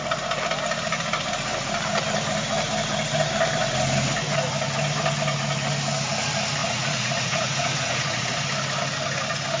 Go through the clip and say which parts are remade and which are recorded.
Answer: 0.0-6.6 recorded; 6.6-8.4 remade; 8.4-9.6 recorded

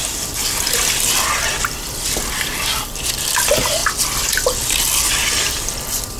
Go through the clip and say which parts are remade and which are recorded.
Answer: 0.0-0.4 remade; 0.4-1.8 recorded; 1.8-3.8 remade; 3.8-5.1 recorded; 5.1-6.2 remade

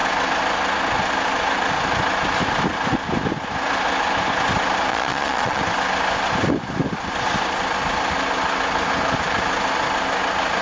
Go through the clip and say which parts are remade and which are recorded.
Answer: 0.0-4.9 recorded; 4.9-5.6 remade; 5.6-10.6 recorded

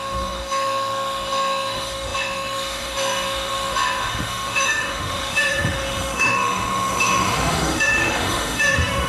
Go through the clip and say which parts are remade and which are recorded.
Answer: 0.0-9.1 remade

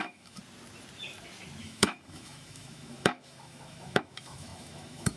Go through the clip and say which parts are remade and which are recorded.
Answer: 0.0-0.4 remade; 0.4-1.6 recorded; 1.6-5.2 remade

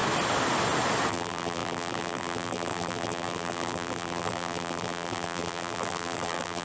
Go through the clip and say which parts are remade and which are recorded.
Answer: 0.0-1.1 recorded; 1.1-6.6 remade

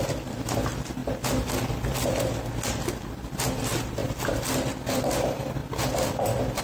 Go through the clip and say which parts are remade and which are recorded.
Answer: 0.0-6.6 recorded